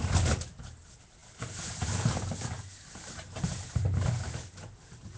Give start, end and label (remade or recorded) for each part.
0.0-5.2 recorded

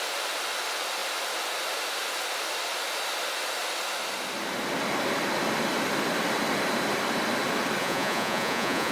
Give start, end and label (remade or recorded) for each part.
0.0-7.8 recorded; 7.8-8.9 remade

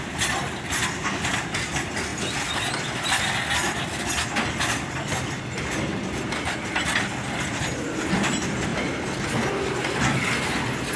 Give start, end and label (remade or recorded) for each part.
0.0-11.0 recorded

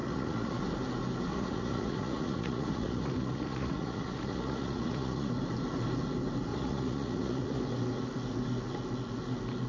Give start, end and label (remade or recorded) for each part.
0.0-0.6 remade; 0.6-1.3 recorded; 1.3-5.3 remade; 5.3-6.5 recorded; 6.5-7.6 remade; 7.6-9.7 recorded

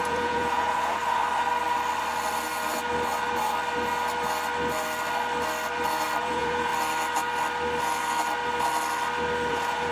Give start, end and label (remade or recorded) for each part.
0.0-1.2 remade; 1.2-6.2 recorded; 6.2-6.7 remade; 6.7-9.5 recorded; 9.5-9.9 remade

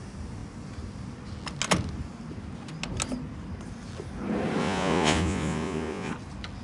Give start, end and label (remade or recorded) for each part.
0.0-4.6 recorded; 4.6-6.1 remade; 6.1-6.6 recorded